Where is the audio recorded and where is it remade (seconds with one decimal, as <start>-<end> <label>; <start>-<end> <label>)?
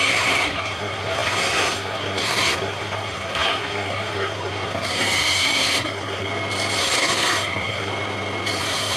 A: 0.0-6.3 remade; 6.3-6.8 recorded; 6.8-7.9 remade; 7.9-8.6 recorded; 8.6-9.0 remade